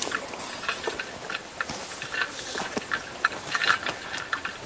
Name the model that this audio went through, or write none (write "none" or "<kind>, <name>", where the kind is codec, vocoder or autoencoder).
vocoder, BigVGAN v2